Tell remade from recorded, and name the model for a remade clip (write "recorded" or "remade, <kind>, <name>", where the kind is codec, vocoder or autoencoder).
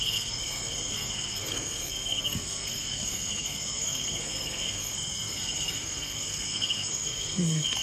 remade, codec, SNAC